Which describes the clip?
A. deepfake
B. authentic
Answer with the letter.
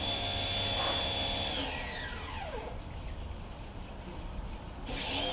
B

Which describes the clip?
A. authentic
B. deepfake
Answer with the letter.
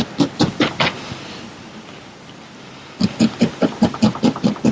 A